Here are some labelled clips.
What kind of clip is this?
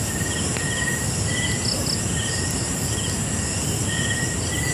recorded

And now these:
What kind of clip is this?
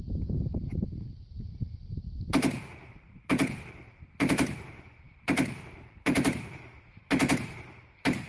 remade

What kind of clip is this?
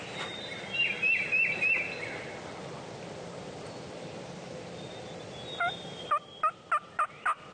recorded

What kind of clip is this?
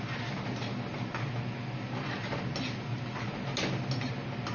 recorded